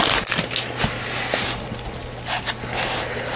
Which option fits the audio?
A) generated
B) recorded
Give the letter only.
B